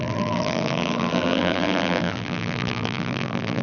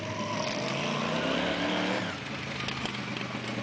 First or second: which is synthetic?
first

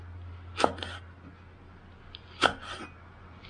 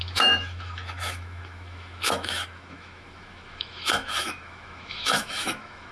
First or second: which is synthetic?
second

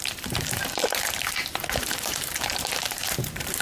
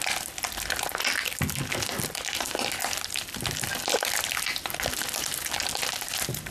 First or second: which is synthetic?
first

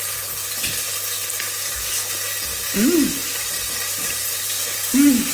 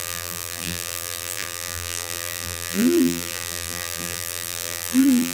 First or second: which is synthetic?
second